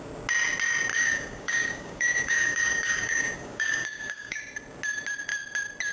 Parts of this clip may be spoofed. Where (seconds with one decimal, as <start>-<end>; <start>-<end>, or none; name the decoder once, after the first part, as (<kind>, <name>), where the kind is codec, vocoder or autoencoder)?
0.9-4.4 (codec, DAC)

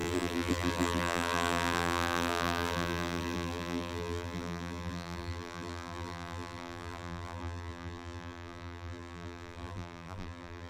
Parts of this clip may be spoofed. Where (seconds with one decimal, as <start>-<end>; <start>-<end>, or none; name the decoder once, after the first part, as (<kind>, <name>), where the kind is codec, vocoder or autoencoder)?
0.0-10.7 (vocoder, BigVGAN v2)